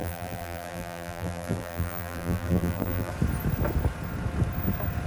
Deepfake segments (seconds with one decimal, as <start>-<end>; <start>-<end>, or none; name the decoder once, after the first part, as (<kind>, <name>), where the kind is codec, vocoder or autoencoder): 0.0-3.1 (vocoder, BigVGAN v2)